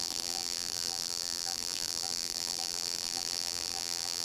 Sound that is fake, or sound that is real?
fake